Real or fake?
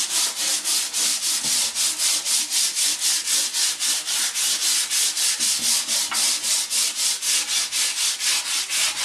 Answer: real